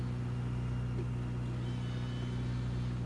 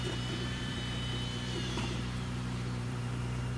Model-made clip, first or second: second